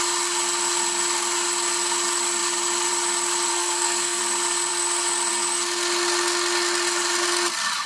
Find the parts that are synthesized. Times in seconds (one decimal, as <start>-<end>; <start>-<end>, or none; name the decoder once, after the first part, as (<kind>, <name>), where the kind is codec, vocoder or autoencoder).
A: 3.5-4.2 (codec, SNAC)